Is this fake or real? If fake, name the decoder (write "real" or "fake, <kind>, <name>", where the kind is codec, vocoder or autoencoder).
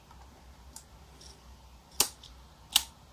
real